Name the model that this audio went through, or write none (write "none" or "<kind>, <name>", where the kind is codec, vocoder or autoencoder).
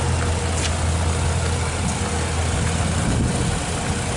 none